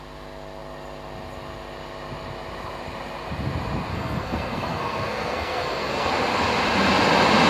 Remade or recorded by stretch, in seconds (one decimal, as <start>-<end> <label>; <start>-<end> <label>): 0.0-3.9 recorded; 3.9-6.1 remade; 6.1-7.5 recorded